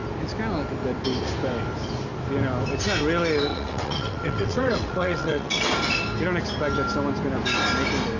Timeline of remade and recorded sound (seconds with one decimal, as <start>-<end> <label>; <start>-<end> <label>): 0.0-3.5 recorded; 3.5-5.7 remade; 5.7-8.2 recorded